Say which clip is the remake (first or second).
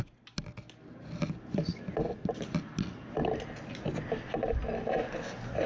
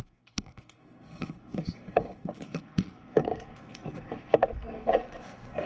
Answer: second